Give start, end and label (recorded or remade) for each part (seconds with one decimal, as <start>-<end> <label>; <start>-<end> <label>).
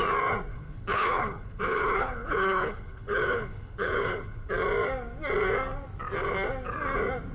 0.0-0.5 recorded; 0.5-4.5 remade; 4.5-7.3 recorded